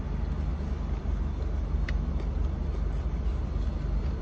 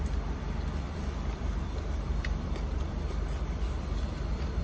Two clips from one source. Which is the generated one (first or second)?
second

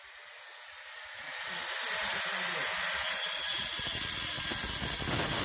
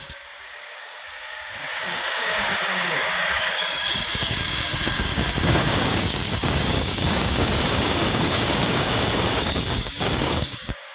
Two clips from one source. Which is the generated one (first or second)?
second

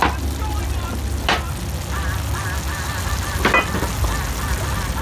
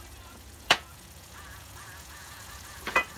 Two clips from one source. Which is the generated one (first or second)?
second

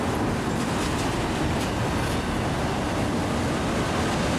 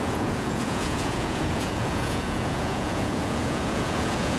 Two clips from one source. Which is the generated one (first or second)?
second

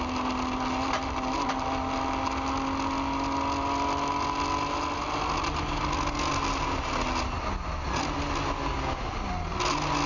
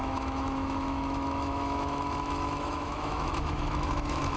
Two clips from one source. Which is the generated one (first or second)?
second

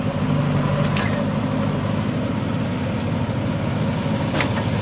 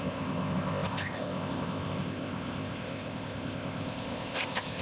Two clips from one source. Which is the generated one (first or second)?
second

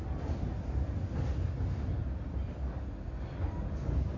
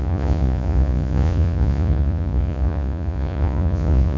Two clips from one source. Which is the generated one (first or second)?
second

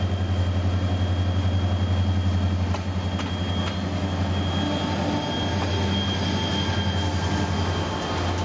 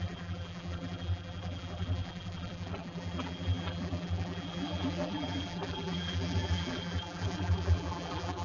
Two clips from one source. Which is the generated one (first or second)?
second